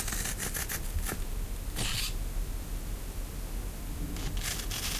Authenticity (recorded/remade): recorded